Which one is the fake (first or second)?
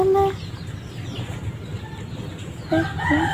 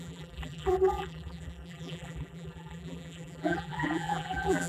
second